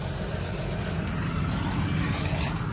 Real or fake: real